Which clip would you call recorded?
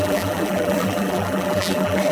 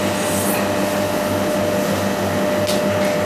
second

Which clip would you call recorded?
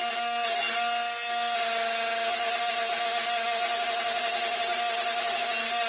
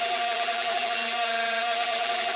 first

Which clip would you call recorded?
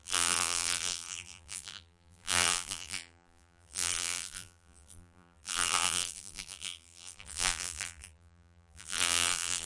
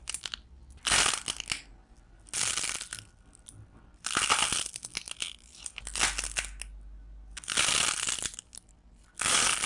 second